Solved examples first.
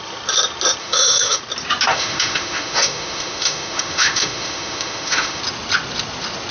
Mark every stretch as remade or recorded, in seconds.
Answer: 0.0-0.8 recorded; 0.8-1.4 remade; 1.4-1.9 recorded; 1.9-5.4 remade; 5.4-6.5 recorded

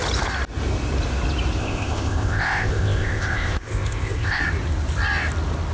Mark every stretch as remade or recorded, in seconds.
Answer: 0.0-1.6 recorded; 1.6-4.4 remade; 4.4-5.7 recorded

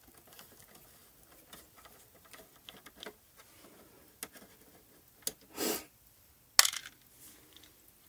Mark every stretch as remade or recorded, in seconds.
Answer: 0.0-8.1 recorded

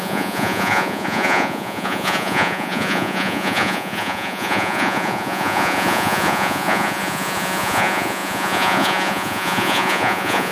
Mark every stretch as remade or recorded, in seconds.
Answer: 0.0-10.5 remade

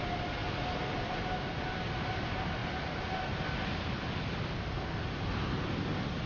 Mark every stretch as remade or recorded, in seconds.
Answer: 0.0-6.3 recorded

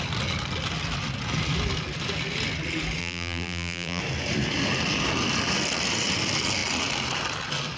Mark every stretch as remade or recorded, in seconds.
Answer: 0.0-3.0 recorded; 3.0-4.0 remade; 4.0-7.8 recorded

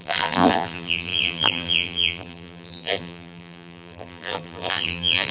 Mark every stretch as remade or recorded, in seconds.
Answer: 0.0-5.3 remade

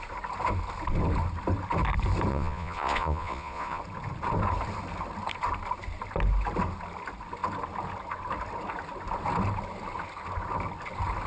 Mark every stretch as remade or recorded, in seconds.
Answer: 0.0-2.3 recorded; 2.3-3.8 remade; 3.8-11.3 recorded